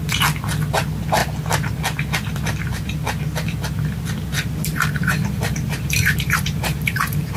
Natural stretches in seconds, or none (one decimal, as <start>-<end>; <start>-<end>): 0.0-4.7